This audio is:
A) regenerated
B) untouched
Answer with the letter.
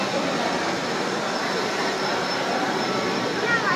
A